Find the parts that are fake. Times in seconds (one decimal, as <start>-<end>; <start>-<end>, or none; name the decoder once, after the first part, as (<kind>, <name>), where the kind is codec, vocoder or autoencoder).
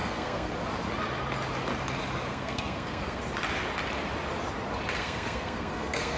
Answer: 0.0-0.5 (codec, SNAC); 2.3-3.2; 5.0-6.2